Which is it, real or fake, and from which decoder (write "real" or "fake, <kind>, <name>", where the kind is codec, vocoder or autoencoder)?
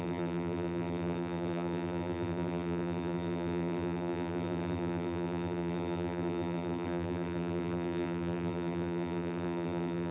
fake, vocoder, BigVGAN v2